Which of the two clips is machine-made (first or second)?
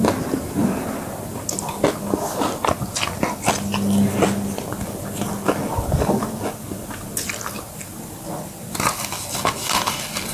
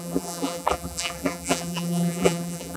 second